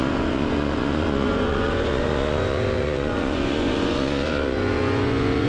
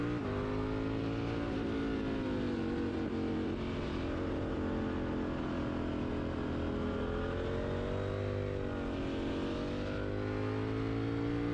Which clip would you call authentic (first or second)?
second